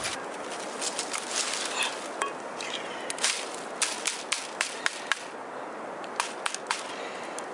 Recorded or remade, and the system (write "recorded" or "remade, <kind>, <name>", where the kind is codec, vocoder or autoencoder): recorded